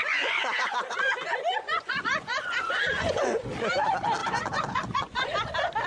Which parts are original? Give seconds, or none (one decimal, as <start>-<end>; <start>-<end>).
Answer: 3.5-4.2; 5.3-5.9